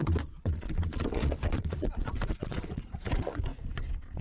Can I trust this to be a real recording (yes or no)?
no